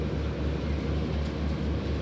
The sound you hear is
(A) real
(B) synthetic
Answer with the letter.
A